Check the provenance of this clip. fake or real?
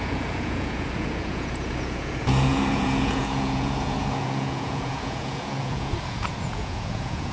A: fake